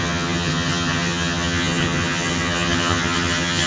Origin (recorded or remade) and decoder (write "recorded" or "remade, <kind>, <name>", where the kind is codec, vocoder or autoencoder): remade, vocoder, HiFi-GAN